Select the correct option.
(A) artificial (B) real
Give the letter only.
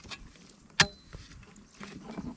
B